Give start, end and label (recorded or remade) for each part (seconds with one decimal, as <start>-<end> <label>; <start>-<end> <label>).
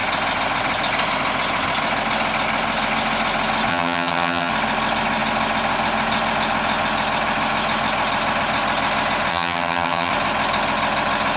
0.0-3.7 recorded; 3.7-4.5 remade; 4.5-9.3 recorded; 9.3-10.1 remade; 10.1-11.4 recorded